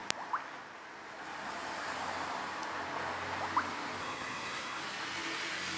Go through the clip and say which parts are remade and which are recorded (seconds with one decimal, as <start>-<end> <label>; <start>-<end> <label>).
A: 0.0-4.0 recorded; 4.0-4.8 remade; 4.8-5.8 recorded